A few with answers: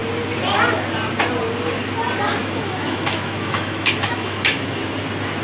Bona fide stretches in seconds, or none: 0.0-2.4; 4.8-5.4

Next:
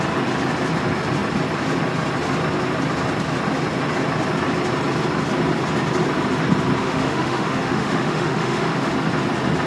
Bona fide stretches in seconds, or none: 0.0-6.8; 8.9-9.7

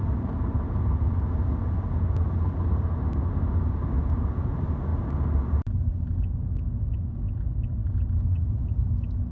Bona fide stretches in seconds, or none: 0.0-9.3

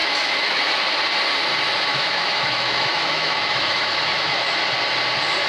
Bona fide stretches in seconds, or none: 0.6-1.9; 4.3-5.5

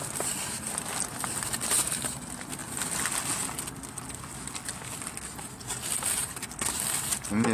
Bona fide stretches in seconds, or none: 0.0-7.5

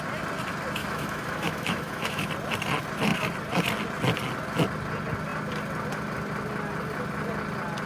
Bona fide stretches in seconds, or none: 0.0-0.8; 2.3-7.9